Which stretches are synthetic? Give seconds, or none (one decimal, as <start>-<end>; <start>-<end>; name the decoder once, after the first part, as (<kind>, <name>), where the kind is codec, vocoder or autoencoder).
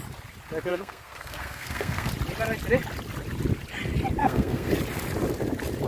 0.7-2.1 (codec, SNAC); 4.2-4.7